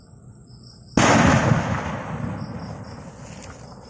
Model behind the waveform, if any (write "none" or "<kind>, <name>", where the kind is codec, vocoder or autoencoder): none